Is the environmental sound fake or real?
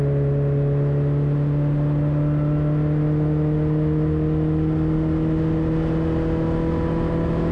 real